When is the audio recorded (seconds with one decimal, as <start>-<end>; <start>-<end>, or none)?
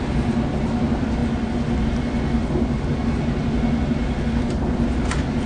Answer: 0.0-5.5